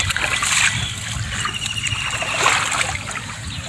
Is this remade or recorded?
recorded